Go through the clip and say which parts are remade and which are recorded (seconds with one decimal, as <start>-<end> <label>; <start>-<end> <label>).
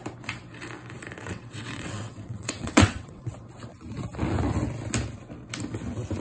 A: 0.0-1.2 recorded; 1.2-3.3 remade; 3.3-6.2 recorded